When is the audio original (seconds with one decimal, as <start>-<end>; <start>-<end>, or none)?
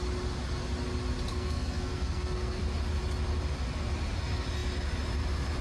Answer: 0.0-1.3; 2.6-5.6